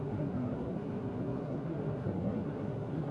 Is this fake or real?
fake